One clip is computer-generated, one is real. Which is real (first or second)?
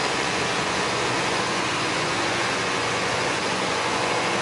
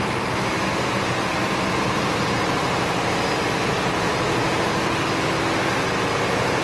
second